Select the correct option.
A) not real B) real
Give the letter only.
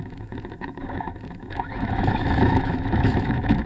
A